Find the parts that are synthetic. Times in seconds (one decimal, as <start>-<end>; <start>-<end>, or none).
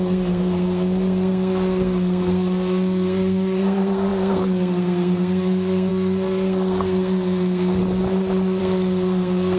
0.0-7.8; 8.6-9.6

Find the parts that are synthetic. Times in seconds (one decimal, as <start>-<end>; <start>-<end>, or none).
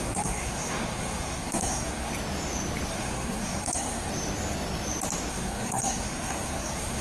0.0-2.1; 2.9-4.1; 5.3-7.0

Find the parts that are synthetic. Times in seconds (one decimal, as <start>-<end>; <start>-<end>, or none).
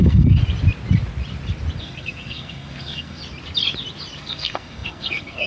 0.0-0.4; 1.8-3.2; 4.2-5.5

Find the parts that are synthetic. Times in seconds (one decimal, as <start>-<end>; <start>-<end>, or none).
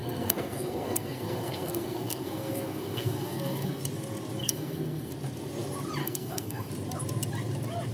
0.0-3.8; 4.4-5.1; 6.0-6.7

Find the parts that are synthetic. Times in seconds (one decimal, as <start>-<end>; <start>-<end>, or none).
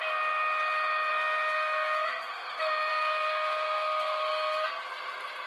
1.1-2.5; 2.9-4.8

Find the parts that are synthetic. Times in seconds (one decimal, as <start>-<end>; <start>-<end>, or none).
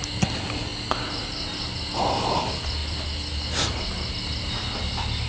none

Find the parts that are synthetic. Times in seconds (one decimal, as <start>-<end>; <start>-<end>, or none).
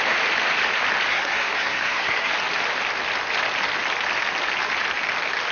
1.1-2.3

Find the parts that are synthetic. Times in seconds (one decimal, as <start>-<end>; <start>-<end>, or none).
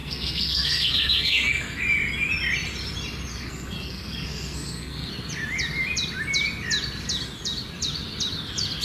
0.0-1.8; 3.3-5.1